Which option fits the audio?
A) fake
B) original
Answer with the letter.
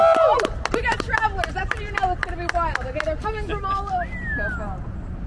B